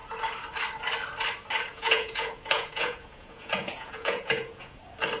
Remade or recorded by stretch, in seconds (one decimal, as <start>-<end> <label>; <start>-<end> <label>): 0.0-1.7 recorded; 1.7-4.8 remade; 4.8-5.2 recorded